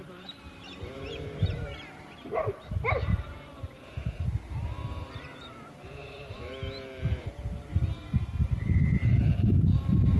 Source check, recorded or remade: remade